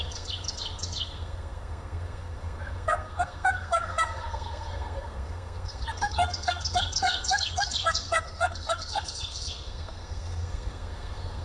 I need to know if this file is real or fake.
fake